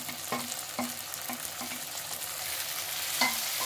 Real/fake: real